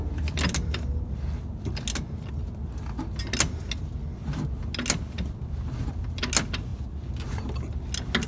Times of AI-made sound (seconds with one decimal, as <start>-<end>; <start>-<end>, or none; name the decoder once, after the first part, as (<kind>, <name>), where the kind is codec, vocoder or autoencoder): none

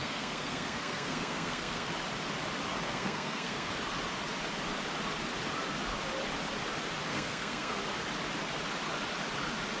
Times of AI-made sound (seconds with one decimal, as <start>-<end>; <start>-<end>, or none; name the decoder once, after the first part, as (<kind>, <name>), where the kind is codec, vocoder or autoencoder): 0.0-1.9 (codec, SNAC); 2.7-3.7; 7.1-7.8

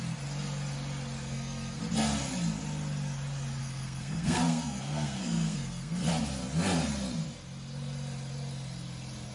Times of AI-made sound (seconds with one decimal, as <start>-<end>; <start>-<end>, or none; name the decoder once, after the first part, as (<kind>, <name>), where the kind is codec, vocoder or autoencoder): 1.2-1.8 (codec, SNAC); 3.6-6.1

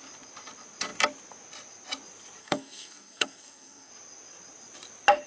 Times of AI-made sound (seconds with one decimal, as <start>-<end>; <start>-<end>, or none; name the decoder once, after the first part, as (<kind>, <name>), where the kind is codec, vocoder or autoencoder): 2.4-3.9 (codec, SNAC)

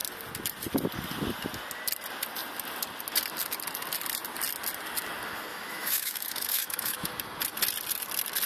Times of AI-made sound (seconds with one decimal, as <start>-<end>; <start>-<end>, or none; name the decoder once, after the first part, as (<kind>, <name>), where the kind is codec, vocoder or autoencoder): 5.5-7.1 (autoencoder, DAC-VAE)

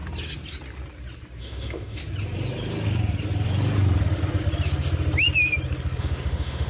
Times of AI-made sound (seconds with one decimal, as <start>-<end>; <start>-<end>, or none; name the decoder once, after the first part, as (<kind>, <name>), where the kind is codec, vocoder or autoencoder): 1.4-2.0 (autoencoder, DAC-VAE); 6.0-6.7

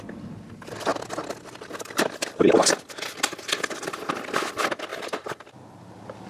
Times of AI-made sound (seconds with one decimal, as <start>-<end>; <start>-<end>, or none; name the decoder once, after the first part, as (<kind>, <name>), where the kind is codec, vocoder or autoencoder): none